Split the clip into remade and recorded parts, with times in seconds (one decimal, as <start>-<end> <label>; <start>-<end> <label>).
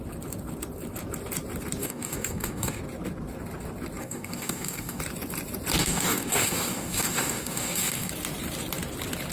0.0-1.8 recorded; 1.8-2.8 remade; 2.8-4.0 recorded; 4.0-5.0 remade; 5.0-5.8 recorded; 5.8-8.1 remade; 8.1-9.3 recorded